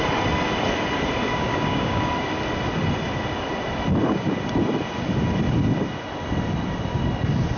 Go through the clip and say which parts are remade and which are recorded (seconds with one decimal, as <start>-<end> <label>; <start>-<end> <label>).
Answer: 0.0-1.3 recorded; 1.3-2.1 remade; 2.1-7.6 recorded